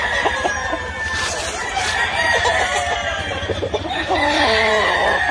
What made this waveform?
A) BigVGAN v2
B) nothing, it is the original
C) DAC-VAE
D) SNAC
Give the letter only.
A